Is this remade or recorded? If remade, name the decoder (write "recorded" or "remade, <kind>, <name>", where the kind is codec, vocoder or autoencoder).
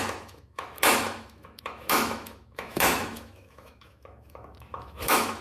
remade, autoencoder, DAC-VAE